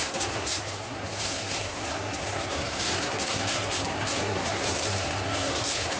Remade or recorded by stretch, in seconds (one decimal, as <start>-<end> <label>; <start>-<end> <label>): 0.0-6.0 remade